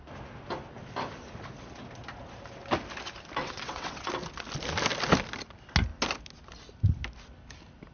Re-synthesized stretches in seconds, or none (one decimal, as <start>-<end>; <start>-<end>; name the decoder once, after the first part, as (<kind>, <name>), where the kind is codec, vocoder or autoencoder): 3.4-4.1 (vocoder, WaveNeXt)